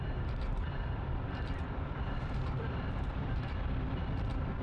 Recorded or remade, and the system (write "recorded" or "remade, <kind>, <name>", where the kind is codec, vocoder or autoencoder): remade, vocoder, BigVGAN v2